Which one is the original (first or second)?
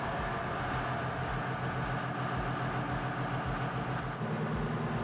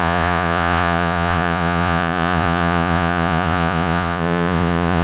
first